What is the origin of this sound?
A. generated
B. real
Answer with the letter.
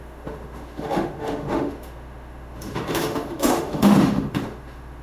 A